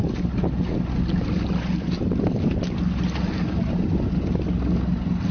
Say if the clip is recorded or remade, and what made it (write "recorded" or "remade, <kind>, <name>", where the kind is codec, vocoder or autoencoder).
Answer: recorded